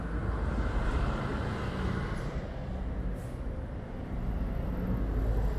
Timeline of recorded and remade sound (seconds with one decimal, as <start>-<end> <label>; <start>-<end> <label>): 0.0-5.6 recorded